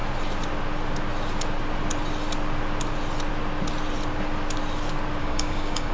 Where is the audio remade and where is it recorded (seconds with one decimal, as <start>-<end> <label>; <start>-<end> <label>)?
0.0-5.2 recorded; 5.2-5.9 remade